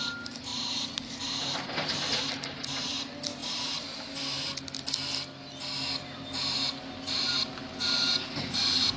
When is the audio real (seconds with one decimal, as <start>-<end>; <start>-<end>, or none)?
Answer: 0.0-9.0